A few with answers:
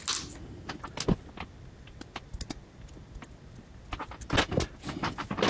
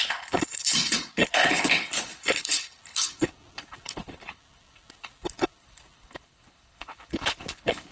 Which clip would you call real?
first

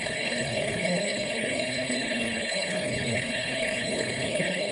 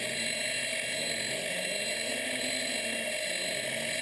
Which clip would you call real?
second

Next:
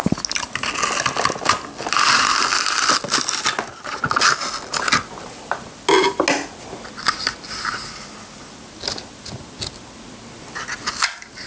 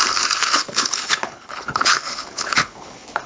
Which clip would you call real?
first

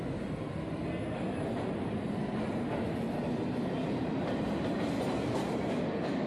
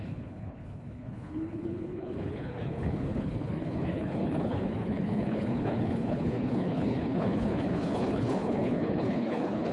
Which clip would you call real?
first